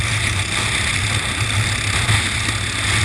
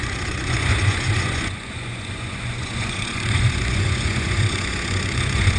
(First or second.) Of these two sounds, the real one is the first